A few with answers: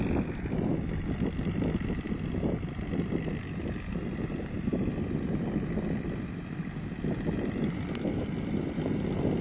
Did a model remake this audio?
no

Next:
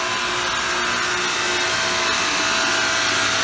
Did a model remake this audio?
no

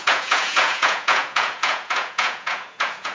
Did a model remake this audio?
yes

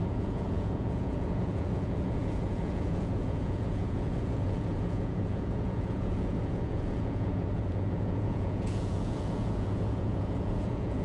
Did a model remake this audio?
yes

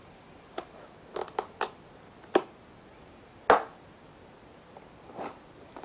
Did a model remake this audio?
no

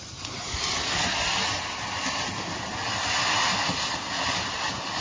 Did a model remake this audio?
no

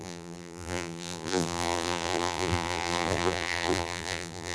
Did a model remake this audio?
yes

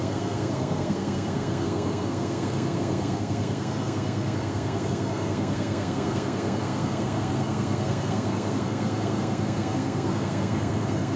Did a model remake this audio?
yes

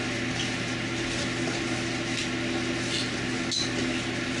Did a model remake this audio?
no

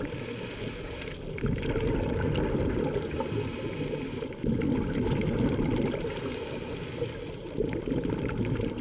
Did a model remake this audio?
no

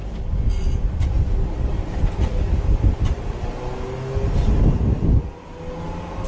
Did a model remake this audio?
no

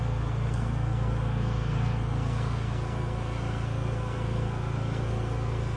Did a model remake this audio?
yes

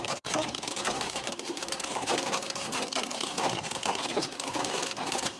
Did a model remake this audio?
yes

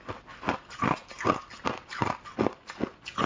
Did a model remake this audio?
no